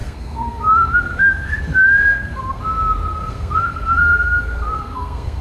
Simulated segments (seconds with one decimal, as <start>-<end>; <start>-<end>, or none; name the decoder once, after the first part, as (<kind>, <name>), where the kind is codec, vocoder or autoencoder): 0.0-1.6 (codec, SNAC); 2.1-2.6; 3.1-5.4